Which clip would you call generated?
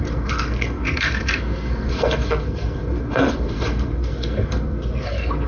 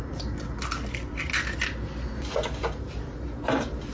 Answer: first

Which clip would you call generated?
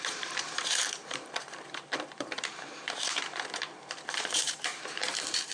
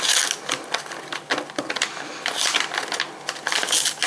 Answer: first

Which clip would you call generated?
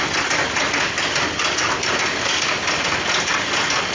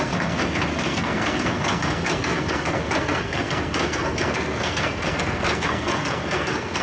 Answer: second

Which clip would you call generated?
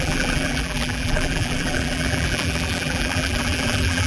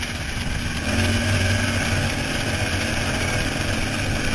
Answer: first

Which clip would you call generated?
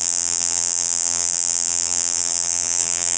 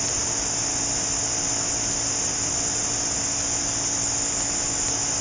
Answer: first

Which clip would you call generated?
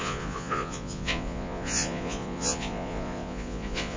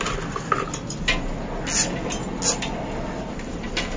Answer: first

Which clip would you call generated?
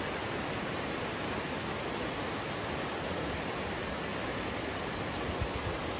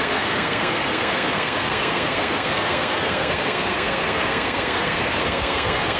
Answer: second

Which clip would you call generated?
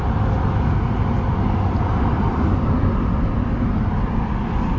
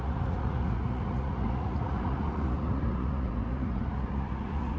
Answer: second